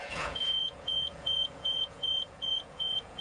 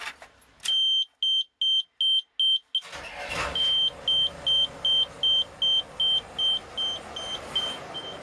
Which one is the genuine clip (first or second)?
second